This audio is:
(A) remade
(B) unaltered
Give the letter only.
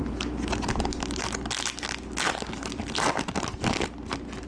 B